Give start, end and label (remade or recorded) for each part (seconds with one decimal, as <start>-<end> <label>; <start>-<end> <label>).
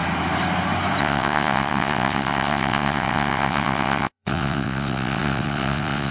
0.0-1.0 recorded; 1.0-6.1 remade